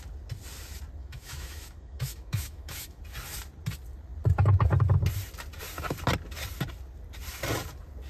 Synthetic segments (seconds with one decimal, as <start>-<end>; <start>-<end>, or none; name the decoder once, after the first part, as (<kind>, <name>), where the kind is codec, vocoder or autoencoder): 1.0-3.0 (autoencoder, DAC-VAE)